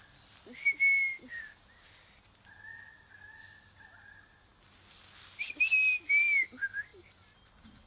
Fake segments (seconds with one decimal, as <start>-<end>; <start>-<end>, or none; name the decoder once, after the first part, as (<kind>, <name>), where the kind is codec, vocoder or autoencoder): none